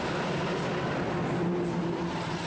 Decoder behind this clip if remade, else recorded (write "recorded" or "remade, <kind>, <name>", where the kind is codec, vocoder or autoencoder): recorded